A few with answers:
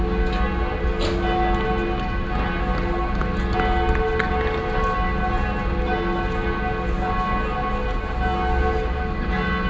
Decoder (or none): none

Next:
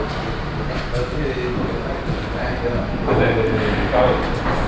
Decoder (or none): none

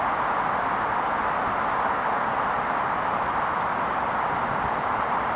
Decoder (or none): none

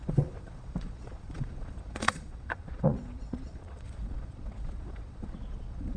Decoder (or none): vocoder, Vocos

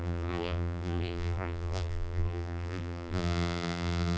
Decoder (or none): vocoder, BigVGAN v2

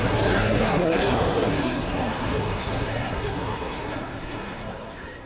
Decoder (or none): codec, SNAC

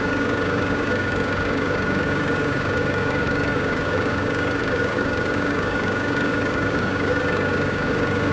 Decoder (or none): codec, DAC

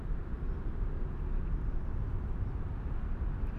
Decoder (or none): none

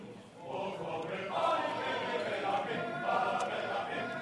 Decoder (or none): none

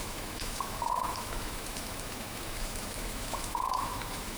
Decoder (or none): autoencoder, DAC-VAE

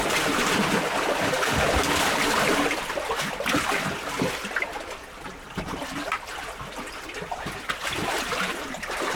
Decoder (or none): vocoder, BigVGAN v2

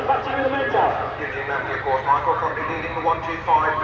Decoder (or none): vocoder, BigVGAN v2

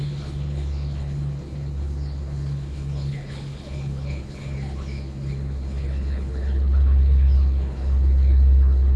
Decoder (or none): codec, HILCodec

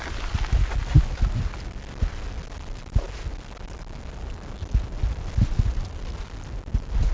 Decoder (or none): none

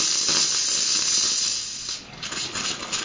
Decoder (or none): none